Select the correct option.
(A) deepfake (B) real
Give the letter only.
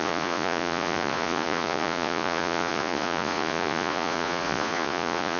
A